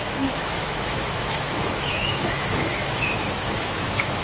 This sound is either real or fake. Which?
fake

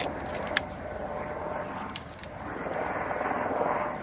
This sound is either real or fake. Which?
real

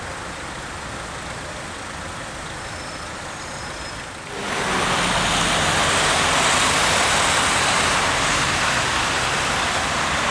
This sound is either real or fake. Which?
real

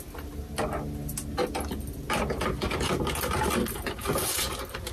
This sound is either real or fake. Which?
real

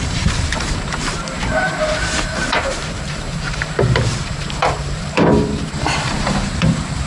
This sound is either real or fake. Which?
fake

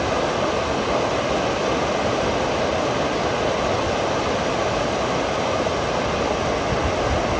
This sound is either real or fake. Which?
real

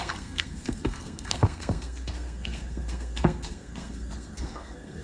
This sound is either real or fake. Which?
fake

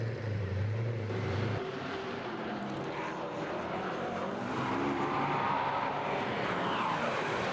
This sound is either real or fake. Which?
fake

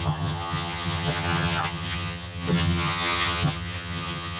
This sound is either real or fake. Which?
fake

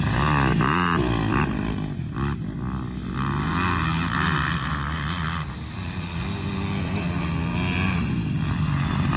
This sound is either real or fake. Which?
real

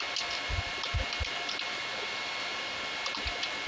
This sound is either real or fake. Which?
real